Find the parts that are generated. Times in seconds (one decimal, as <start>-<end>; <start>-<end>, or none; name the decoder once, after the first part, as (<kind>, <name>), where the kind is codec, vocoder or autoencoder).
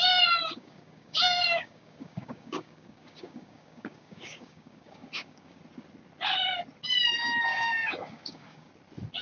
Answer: 0.4-5.6 (codec, DAC); 7.5-8.7